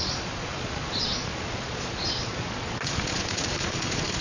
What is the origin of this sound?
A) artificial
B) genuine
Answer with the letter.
A